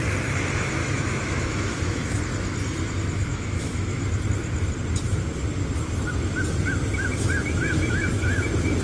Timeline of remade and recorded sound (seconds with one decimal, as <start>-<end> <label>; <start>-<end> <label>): 0.0-0.8 recorded; 0.8-2.2 remade; 2.2-3.3 recorded; 3.3-4.0 remade; 4.0-8.8 recorded